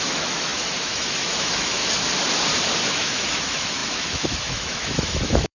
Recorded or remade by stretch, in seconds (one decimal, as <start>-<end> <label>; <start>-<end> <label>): 0.0-1.8 remade; 1.8-2.9 recorded; 2.9-5.5 remade